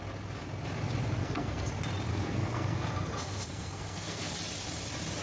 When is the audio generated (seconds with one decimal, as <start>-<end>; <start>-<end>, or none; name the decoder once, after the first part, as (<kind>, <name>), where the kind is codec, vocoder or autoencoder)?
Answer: 1.2-1.7 (codec, SNAC); 2.1-4.3